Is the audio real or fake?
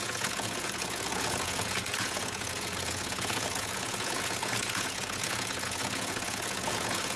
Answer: fake